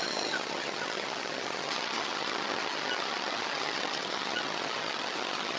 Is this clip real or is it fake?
fake